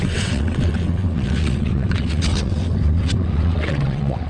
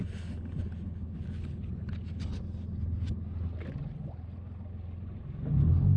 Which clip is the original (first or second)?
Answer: second